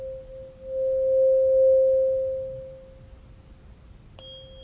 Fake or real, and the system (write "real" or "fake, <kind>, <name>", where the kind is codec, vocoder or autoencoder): real